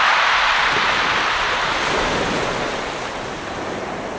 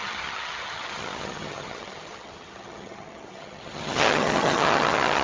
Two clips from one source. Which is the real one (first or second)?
first